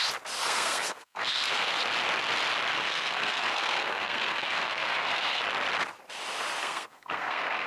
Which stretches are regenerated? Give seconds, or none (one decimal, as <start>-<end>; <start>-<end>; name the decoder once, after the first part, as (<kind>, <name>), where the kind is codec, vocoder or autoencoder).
0.4-1.8 (codec, SNAC); 2.7-5.4; 6.6-7.7